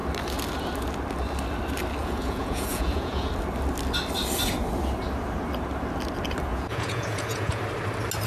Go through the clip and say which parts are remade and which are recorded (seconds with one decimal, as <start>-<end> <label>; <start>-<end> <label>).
0.0-2.0 recorded; 2.0-3.3 remade; 3.3-6.5 recorded; 6.5-7.6 remade; 7.6-8.3 recorded